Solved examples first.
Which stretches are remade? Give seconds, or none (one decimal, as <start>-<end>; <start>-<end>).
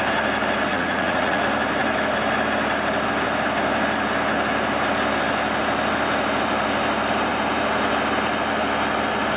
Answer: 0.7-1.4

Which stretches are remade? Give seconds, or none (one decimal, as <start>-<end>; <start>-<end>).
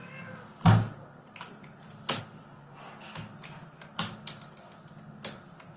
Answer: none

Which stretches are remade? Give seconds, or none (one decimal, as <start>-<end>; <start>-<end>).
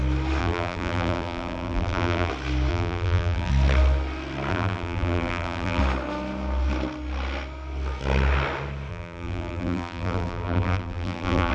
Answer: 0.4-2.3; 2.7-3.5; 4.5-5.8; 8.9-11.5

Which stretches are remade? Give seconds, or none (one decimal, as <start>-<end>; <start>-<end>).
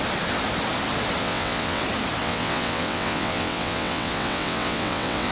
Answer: 1.2-1.8; 2.2-5.3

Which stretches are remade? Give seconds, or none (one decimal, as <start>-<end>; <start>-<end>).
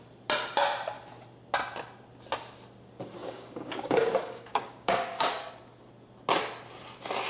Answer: 3.2-5.5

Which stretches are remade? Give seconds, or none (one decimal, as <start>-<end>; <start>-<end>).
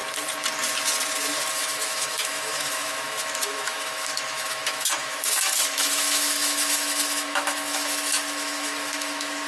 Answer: 1.5-9.5